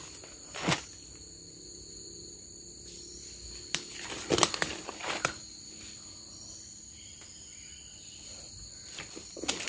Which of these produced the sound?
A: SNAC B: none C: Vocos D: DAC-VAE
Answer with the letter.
B